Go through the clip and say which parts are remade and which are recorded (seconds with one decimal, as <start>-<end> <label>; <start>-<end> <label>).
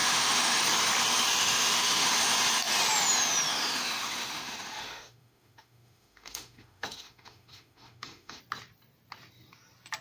0.0-0.6 remade; 0.6-1.4 recorded; 1.4-2.1 remade; 2.1-3.5 recorded; 3.5-8.4 remade; 8.4-10.0 recorded